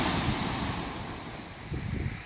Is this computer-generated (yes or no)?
no